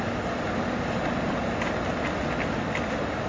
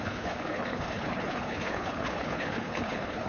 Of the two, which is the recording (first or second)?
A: first